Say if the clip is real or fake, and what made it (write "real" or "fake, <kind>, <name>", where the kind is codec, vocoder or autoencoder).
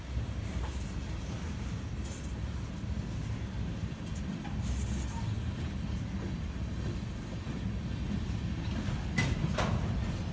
real